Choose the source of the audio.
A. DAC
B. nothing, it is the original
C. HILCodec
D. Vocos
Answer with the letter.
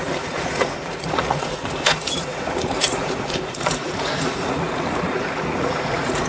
D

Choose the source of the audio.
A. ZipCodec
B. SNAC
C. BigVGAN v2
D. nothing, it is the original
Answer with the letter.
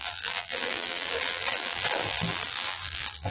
C